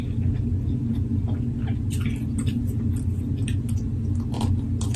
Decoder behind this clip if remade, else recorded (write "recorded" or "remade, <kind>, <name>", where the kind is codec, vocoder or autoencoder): recorded